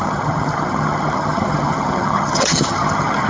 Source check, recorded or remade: remade